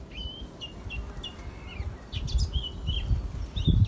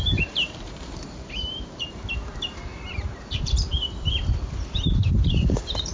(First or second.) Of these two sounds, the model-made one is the second